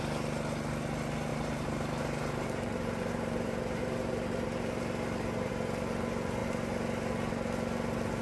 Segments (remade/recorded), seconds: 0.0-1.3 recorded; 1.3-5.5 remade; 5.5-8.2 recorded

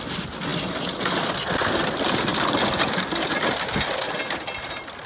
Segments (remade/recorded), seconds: 0.0-5.1 recorded